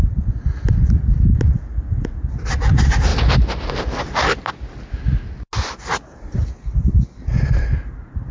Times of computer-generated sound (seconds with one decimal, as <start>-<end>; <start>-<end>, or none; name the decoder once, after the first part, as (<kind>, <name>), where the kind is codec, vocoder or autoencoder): none